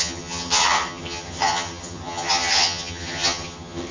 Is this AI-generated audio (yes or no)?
yes